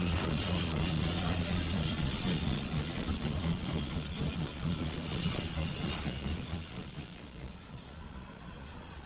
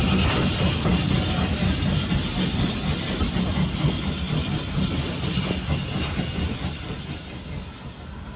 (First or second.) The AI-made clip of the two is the first